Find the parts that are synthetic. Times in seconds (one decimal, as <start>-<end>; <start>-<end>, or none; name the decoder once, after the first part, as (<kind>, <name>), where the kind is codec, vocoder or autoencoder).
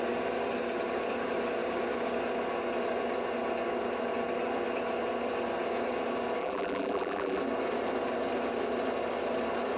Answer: 6.4-7.4 (vocoder, BigVGAN v2)